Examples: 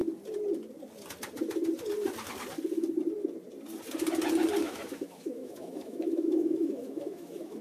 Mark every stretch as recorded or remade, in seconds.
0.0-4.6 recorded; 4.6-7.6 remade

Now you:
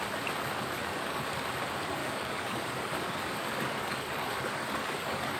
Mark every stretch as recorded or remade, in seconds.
0.0-0.8 recorded; 0.8-1.3 remade; 1.3-2.0 recorded; 2.0-5.4 remade

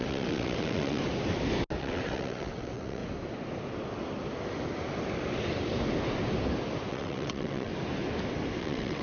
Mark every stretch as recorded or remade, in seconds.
0.0-1.0 remade; 1.0-1.8 recorded; 1.8-3.0 remade; 3.0-6.9 recorded; 6.9-7.7 remade; 7.7-8.6 recorded; 8.6-9.0 remade

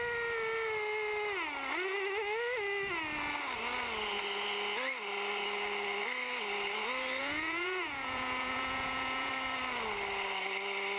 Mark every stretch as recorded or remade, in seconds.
0.0-7.2 recorded; 7.2-9.3 remade; 9.3-11.0 recorded

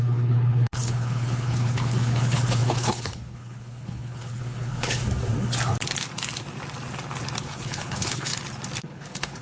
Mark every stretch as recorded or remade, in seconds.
0.0-5.0 remade; 5.0-7.4 recorded; 7.4-8.3 remade; 8.3-8.8 recorded; 8.8-9.4 remade

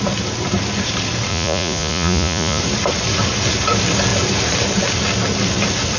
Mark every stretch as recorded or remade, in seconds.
0.0-1.3 recorded; 1.3-2.6 remade; 2.6-6.0 recorded

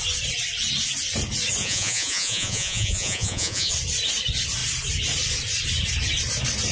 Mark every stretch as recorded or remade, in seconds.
0.0-1.6 recorded; 1.6-3.7 remade; 3.7-6.7 recorded